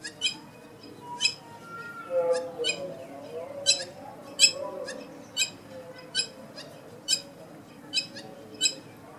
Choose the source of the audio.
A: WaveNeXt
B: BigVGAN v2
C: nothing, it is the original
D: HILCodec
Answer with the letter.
C